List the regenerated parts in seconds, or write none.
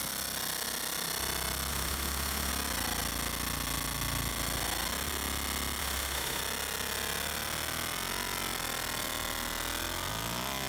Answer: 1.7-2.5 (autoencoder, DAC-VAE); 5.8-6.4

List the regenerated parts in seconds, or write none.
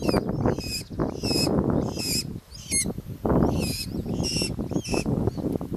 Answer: none